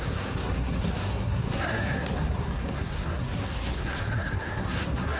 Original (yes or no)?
no